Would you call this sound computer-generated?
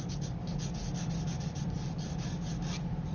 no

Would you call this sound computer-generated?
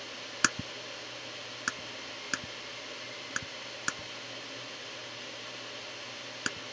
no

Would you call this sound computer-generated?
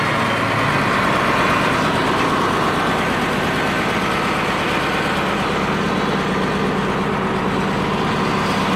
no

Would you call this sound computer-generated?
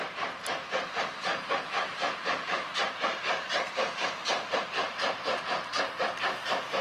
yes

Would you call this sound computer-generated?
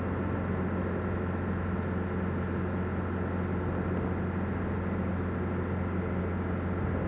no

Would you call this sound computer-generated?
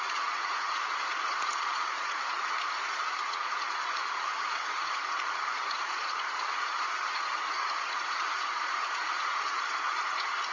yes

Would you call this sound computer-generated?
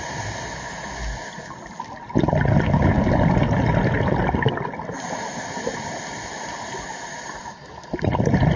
no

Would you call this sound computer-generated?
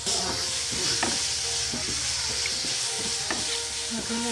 no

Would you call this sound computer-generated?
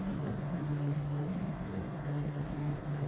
yes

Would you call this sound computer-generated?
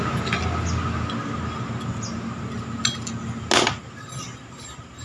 no